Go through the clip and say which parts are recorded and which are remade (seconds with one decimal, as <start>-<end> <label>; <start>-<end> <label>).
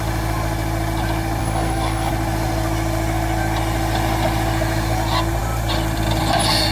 0.0-1.4 recorded; 1.4-2.1 remade; 2.1-6.7 recorded